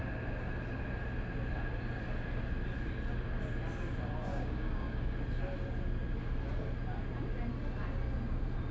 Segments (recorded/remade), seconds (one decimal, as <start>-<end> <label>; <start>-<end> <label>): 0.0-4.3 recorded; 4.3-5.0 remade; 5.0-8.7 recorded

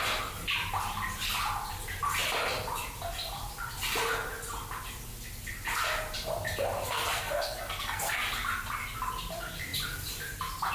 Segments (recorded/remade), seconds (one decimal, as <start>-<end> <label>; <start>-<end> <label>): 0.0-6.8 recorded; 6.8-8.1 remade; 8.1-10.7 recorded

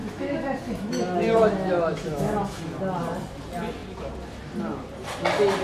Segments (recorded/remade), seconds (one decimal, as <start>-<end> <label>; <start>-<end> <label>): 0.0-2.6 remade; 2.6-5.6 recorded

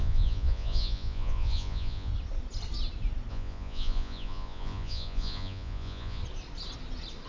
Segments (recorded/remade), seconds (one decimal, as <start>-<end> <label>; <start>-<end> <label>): 0.0-2.1 remade; 2.1-3.3 recorded; 3.3-6.2 remade; 6.2-7.3 recorded

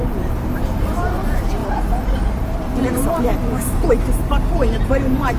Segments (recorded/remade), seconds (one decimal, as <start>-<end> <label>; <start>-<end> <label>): 0.0-1.6 remade; 1.6-2.4 recorded; 2.4-3.3 remade; 3.3-3.9 recorded; 3.9-5.4 remade

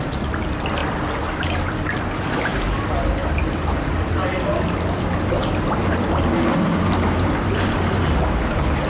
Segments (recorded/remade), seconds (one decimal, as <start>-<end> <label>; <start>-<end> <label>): 0.0-0.8 remade; 0.8-2.4 recorded; 2.4-3.2 remade; 3.2-6.6 recorded; 6.6-8.9 remade

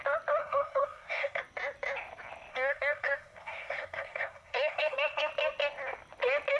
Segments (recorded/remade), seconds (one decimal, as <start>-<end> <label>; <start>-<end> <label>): 0.0-0.4 recorded; 0.4-1.4 remade; 1.4-2.5 recorded; 2.5-5.3 remade; 5.3-6.6 recorded

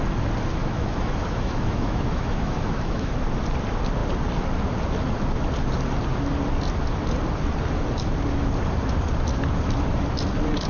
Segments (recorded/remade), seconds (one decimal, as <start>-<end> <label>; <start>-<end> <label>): 0.0-0.6 recorded; 0.6-3.1 remade; 3.1-10.7 recorded